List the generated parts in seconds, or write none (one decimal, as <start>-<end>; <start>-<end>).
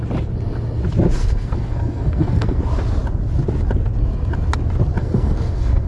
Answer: 1.2-2.6; 5.0-5.9